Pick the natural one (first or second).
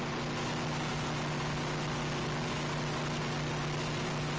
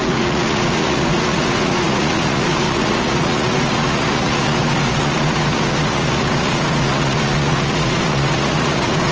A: first